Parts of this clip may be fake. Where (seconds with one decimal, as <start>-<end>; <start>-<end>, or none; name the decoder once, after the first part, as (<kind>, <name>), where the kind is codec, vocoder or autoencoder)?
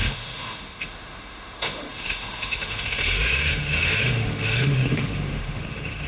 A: 0.0-6.1 (autoencoder, DAC-VAE)